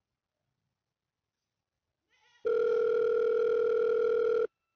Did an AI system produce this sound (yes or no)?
no